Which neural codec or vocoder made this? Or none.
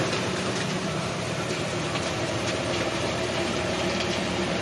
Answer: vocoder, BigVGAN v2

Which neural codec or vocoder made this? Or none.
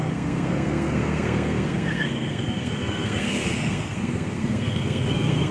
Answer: codec, SNAC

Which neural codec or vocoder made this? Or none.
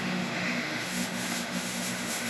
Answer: autoencoder, DAC-VAE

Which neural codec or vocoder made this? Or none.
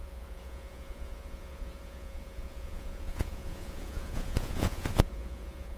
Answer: vocoder, Vocos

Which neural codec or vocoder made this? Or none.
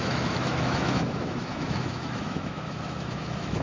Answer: autoencoder, DAC-VAE